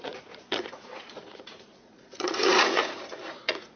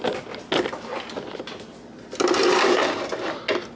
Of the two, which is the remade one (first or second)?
first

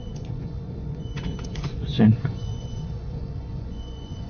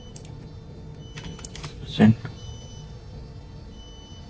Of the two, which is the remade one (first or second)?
first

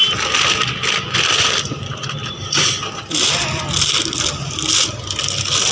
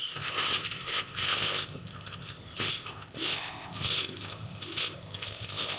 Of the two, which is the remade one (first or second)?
second